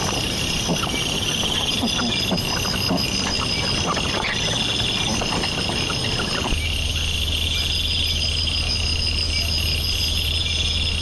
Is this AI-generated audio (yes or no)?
no